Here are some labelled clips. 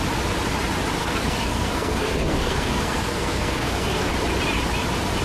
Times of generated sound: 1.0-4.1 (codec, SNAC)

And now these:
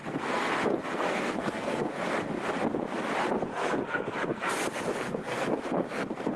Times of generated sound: 0.0-2.0 (codec, SNAC); 3.5-4.5; 4.9-6.4

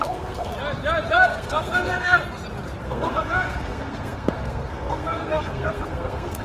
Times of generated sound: 0.0-0.5 (codec, SNAC); 1.1-2.2; 2.8-6.4

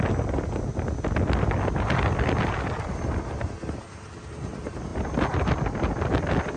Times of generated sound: none

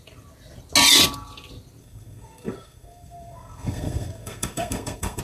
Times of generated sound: 1.8-5.2 (codec, SNAC)